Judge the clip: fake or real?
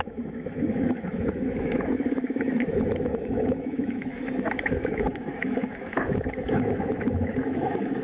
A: fake